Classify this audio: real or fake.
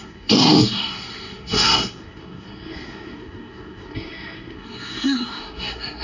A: fake